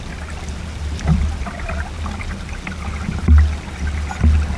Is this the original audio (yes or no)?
yes